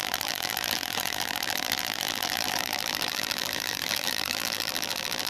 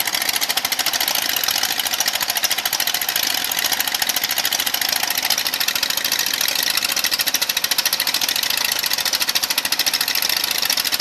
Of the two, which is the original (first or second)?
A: second